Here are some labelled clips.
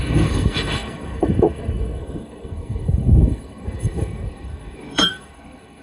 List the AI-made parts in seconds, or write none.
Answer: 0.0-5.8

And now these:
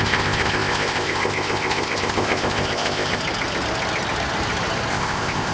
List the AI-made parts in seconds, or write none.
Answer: 0.0-3.2; 4.9-5.5